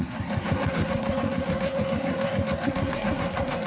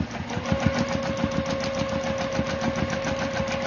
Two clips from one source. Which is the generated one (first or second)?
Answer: first